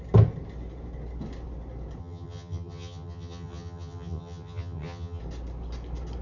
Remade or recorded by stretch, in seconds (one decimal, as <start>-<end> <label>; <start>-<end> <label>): 0.0-2.0 recorded; 2.0-5.2 remade; 5.2-6.2 recorded